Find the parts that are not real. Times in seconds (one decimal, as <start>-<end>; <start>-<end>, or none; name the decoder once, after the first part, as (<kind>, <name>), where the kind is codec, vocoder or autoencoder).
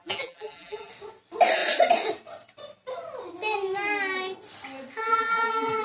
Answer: 0.0-0.9 (vocoder, BigVGAN v2); 5.0-5.8